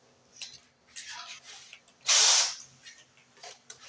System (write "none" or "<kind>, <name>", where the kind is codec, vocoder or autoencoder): none